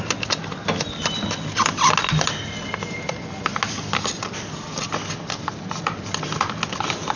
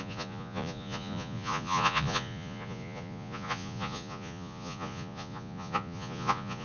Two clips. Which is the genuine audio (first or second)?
first